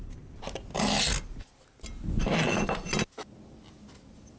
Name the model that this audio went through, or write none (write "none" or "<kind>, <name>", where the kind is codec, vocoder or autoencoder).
none